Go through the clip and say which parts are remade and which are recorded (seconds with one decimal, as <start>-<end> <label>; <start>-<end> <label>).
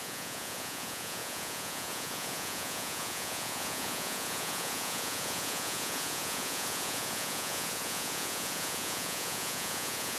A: 0.0-10.2 remade